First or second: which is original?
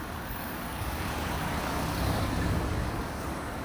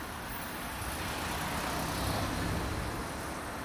second